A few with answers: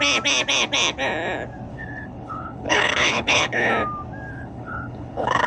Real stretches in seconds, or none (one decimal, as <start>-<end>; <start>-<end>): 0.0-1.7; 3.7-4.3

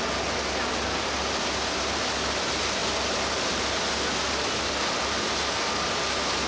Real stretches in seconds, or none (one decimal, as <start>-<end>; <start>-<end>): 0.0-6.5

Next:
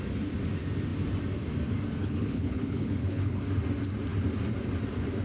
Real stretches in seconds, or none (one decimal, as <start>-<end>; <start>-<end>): 0.0-2.0; 3.4-5.2